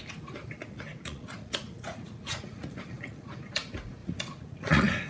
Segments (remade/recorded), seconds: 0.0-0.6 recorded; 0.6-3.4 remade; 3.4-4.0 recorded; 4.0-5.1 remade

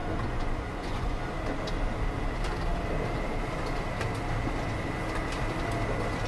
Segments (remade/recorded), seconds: 0.0-1.2 remade; 1.2-6.3 recorded

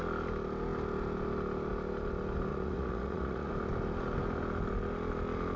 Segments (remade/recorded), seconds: 0.0-2.5 recorded; 2.5-3.5 remade; 3.5-5.6 recorded

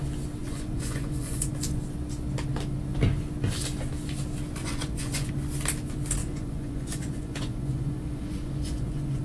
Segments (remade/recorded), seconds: 0.0-0.4 recorded; 0.4-1.5 remade; 1.5-4.6 recorded; 4.6-5.3 remade; 5.3-6.2 recorded; 6.2-9.2 remade

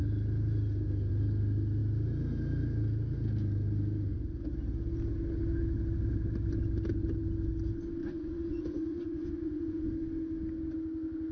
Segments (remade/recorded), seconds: 0.0-8.0 recorded; 8.0-9.9 remade; 9.9-11.3 recorded

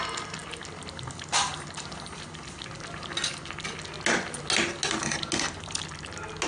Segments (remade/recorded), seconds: 0.0-6.5 recorded

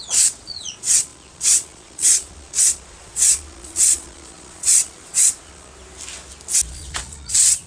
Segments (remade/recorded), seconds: 0.0-5.7 remade; 5.7-6.7 recorded; 6.7-7.7 remade

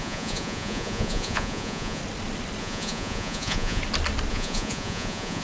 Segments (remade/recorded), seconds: 0.0-2.0 remade; 2.0-2.6 recorded; 2.6-3.8 remade; 3.8-4.3 recorded; 4.3-5.4 remade